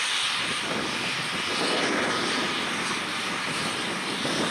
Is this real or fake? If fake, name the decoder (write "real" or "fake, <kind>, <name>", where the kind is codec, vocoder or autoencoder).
real